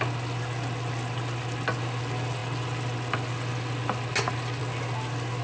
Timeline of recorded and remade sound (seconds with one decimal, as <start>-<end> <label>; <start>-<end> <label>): 0.0-5.4 recorded

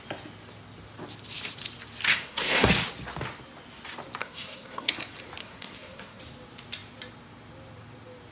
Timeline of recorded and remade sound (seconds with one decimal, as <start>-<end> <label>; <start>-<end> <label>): 0.0-2.1 recorded; 2.1-2.7 remade; 2.7-4.2 recorded; 4.2-4.9 remade; 4.9-5.4 recorded; 5.4-6.2 remade; 6.2-8.3 recorded

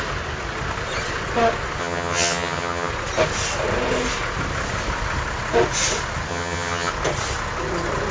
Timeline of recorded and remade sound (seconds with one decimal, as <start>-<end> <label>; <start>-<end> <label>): 0.0-1.8 recorded; 1.8-2.9 remade; 2.9-6.3 recorded; 6.3-6.9 remade; 6.9-8.1 recorded

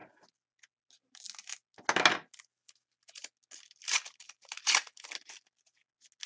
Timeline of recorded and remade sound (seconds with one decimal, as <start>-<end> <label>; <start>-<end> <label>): 0.0-6.3 recorded

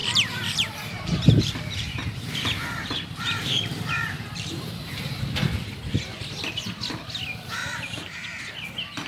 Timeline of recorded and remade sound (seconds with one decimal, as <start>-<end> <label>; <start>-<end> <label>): 0.0-5.1 remade; 5.1-7.6 recorded; 7.6-8.4 remade; 8.4-9.1 recorded

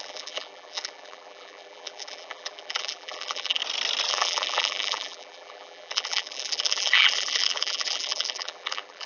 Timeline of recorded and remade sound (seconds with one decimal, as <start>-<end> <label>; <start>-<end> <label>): 0.0-3.6 remade; 3.6-4.1 recorded; 4.1-9.1 remade

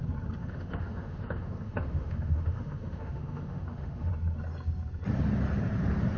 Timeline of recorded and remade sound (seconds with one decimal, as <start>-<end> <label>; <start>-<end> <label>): 0.0-0.4 recorded; 0.4-4.1 remade; 4.1-6.2 recorded